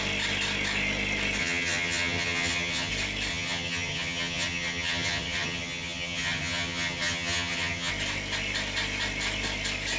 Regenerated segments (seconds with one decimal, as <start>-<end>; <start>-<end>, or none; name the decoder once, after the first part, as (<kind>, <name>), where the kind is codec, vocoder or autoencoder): 1.4-2.9 (vocoder, HiFi-GAN); 3.3-7.9